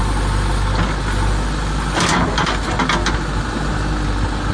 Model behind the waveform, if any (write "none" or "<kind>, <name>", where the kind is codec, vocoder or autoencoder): none